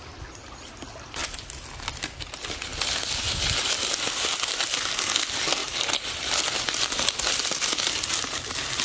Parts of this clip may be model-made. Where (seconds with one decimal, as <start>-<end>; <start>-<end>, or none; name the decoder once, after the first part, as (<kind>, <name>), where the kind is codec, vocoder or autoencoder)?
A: 5.6-6.3 (vocoder, BigVGAN v2)